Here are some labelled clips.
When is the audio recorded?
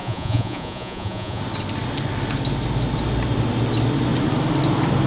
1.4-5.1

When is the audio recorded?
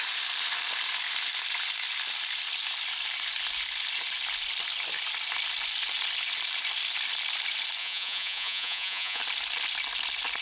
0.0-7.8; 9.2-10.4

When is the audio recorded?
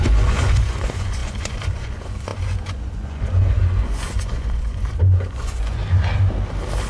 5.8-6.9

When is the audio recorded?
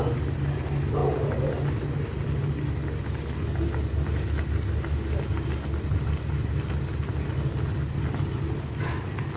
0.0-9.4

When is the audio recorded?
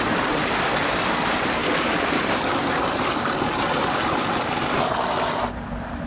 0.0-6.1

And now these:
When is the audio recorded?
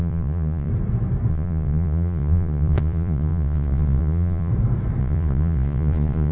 0.7-1.3; 4.5-5.0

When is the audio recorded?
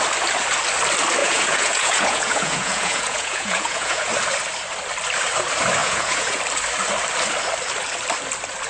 0.0-1.2; 4.1-5.8; 6.4-8.7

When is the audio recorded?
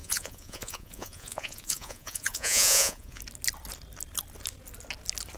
3.2-5.4